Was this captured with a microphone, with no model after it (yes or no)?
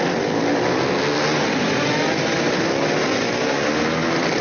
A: yes